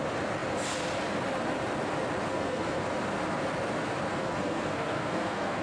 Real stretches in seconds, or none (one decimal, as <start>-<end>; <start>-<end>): 0.0-2.3; 2.8-4.1